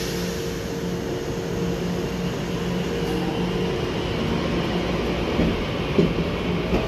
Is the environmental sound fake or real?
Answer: real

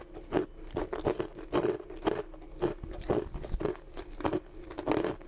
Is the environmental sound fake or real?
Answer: real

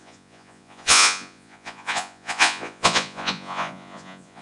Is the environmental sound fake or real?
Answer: fake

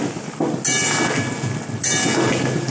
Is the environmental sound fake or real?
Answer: real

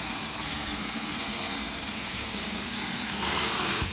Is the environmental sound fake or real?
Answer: fake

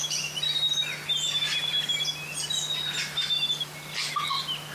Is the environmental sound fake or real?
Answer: real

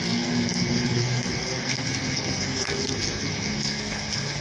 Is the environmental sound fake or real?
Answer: fake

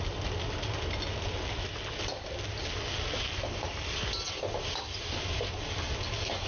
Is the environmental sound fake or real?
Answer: real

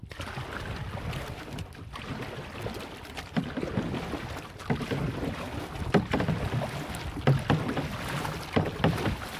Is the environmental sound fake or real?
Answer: real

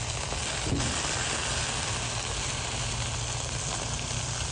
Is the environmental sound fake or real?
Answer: real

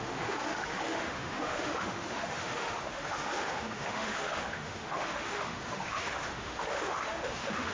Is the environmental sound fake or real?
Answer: fake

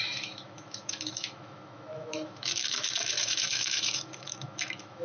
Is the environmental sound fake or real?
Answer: fake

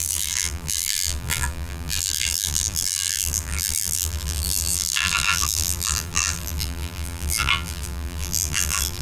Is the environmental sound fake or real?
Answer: fake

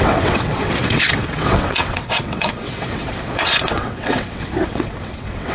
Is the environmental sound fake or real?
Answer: fake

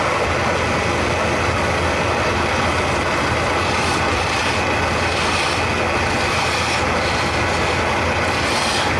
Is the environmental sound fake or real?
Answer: real